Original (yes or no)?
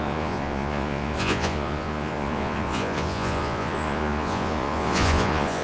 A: no